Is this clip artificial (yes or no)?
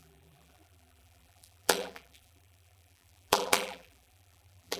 yes